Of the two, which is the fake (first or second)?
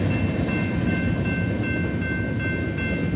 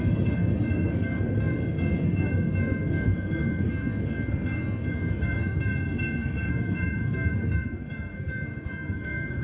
second